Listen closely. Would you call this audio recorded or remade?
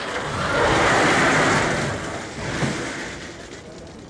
recorded